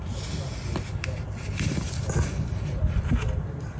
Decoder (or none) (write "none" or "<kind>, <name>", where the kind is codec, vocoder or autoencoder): none